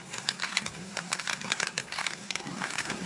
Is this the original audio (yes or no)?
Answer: no